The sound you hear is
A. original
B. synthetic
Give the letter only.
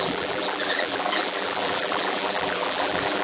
B